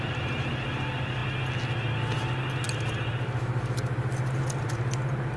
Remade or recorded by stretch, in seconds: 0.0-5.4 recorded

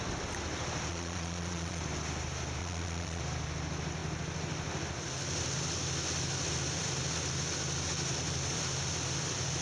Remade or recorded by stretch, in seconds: 0.0-0.9 recorded; 0.9-1.8 remade; 1.8-2.6 recorded; 2.6-3.2 remade; 3.2-9.6 recorded

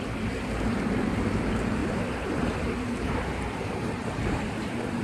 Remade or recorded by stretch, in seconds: 0.0-1.8 recorded; 1.8-4.5 remade; 4.5-5.0 recorded

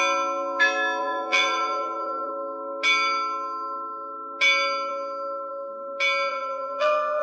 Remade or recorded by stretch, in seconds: 0.0-1.0 recorded; 1.0-2.3 remade; 2.3-6.3 recorded; 6.3-7.2 remade

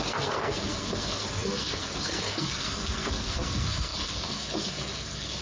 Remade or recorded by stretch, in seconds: 0.0-5.4 remade

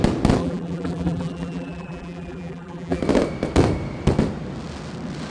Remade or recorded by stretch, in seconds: 0.0-0.4 recorded; 0.4-3.0 remade; 3.0-5.3 recorded

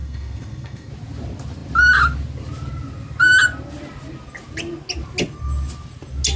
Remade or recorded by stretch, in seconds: 0.0-0.9 remade; 0.9-6.4 recorded

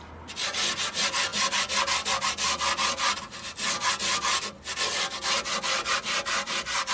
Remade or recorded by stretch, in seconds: 0.0-6.9 recorded